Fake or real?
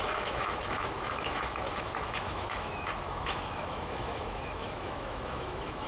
fake